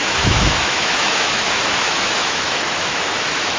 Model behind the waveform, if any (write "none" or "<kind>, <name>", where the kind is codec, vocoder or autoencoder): autoencoder, DAC-VAE